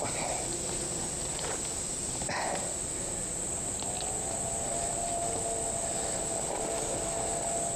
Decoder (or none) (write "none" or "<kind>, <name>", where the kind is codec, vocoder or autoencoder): none